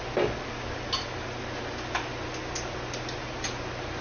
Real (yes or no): yes